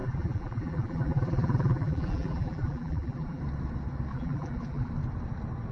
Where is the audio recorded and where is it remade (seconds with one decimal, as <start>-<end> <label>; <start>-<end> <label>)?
0.0-3.4 remade; 3.4-4.1 recorded; 4.1-4.9 remade; 4.9-5.7 recorded